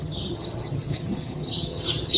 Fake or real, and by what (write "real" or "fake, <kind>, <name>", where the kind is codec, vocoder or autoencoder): fake, vocoder, HiFi-GAN